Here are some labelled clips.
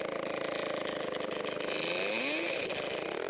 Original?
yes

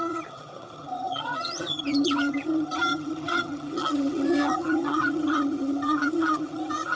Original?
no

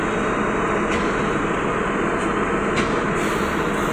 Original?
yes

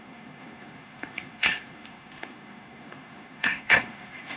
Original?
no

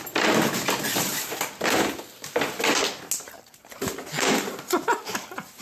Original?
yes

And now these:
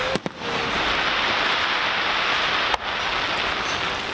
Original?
yes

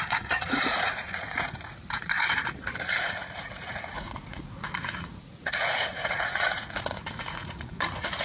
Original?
no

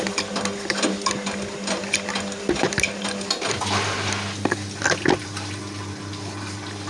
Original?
yes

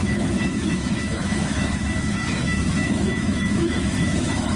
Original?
no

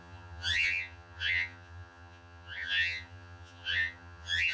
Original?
no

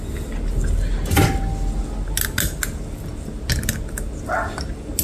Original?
yes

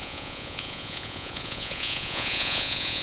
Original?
no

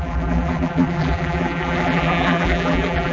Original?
no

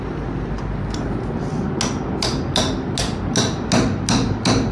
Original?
yes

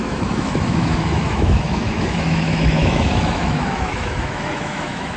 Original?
no